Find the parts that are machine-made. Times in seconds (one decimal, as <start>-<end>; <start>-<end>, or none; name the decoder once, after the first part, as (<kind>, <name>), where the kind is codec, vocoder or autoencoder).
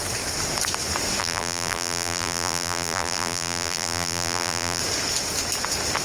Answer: 1.2-4.8 (vocoder, BigVGAN v2)